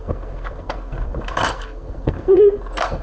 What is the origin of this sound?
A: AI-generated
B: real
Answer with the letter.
A